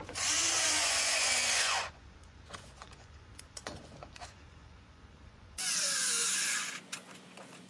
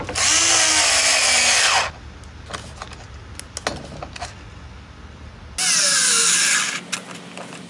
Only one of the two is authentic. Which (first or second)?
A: second